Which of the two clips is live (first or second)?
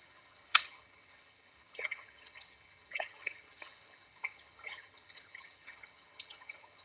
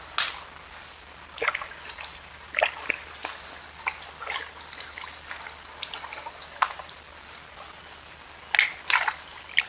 second